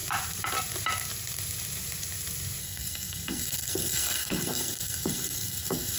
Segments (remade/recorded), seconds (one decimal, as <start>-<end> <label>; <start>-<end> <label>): 0.0-2.6 recorded; 2.6-6.0 remade